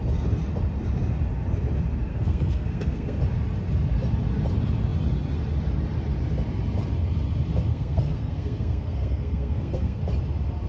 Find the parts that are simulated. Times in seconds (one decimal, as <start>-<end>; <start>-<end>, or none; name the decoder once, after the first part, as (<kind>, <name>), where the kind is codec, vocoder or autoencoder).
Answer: 2.1-3.2 (codec, SNAC); 7.7-10.0

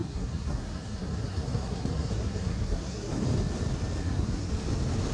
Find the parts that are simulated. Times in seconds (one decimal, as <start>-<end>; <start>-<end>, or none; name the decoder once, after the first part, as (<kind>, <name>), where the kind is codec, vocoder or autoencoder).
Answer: 0.0-3.1 (codec, SNAC); 4.0-4.5

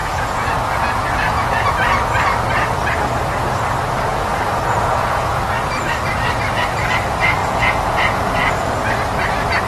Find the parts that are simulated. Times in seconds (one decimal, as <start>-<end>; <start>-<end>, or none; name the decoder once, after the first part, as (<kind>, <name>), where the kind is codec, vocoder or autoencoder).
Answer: 0.0-1.7 (vocoder, Vocos); 4.1-5.4; 7.4-8.5

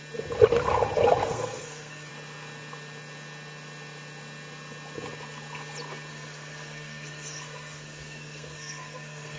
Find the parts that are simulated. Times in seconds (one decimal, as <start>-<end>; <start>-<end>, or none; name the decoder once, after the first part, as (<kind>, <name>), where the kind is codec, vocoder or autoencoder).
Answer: 1.2-2.1 (codec, SNAC); 6.1-9.4

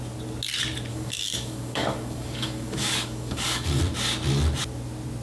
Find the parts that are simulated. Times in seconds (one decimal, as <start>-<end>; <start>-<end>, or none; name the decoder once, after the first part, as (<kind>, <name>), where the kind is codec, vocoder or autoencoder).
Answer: 0.9-3.8 (codec, DAC)

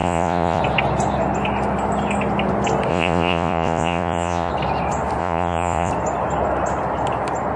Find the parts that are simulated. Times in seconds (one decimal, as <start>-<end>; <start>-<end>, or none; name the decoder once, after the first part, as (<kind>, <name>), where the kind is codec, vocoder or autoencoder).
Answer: 0.0-0.6 (vocoder, Vocos); 2.9-4.5; 5.2-5.9